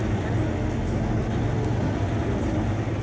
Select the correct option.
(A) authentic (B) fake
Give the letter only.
A